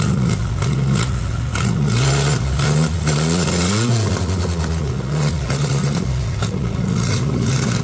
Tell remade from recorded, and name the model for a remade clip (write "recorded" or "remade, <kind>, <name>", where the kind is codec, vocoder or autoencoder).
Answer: remade, vocoder, Vocos